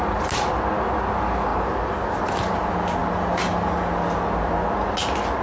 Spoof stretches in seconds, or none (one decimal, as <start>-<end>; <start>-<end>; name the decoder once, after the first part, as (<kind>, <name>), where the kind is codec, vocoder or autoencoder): none